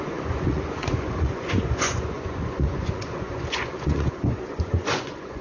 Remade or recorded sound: remade